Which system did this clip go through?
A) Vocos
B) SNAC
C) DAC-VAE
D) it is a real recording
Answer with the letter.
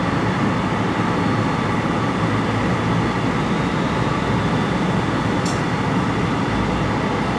D